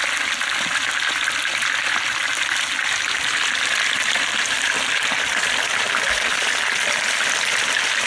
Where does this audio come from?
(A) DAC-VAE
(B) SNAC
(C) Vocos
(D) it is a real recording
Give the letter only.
D